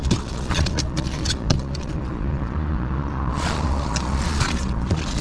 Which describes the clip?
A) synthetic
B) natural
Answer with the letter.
A